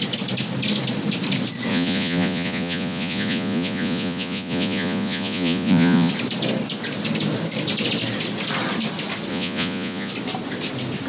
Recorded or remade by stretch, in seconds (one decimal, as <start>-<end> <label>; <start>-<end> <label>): 0.0-1.7 recorded; 1.7-6.1 remade; 6.1-9.3 recorded; 9.3-10.1 remade; 10.1-11.1 recorded